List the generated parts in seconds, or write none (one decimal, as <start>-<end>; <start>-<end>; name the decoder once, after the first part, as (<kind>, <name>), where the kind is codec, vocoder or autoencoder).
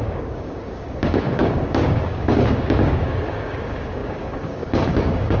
0.0-5.4 (codec, DAC)